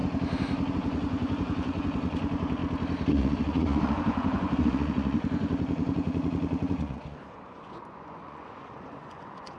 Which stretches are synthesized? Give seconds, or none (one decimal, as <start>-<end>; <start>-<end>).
0.7-2.6; 3.1-9.6